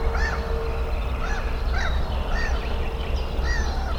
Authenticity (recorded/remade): recorded